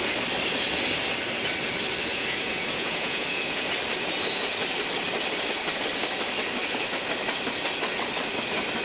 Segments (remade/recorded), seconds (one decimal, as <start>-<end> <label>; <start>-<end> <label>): 0.0-2.1 recorded; 2.1-3.7 remade; 3.7-8.8 recorded